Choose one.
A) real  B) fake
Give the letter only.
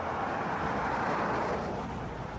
A